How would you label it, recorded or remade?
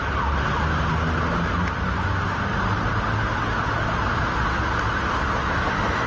recorded